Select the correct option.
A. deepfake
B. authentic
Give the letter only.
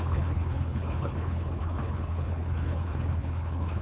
A